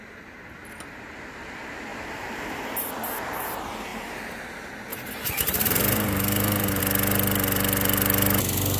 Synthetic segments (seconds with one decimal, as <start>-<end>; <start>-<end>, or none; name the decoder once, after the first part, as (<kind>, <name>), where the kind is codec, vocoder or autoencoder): 1.9-2.8 (vocoder, BigVGAN v2); 3.9-4.4; 4.9-6.8